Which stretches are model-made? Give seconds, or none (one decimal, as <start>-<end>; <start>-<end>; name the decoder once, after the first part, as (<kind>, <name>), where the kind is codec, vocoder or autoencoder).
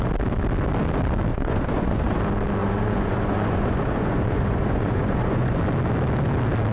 1.3-2.2 (vocoder, Vocos); 2.6-5.6